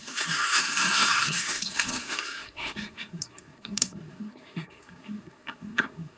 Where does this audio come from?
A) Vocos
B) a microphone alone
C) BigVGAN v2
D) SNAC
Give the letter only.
D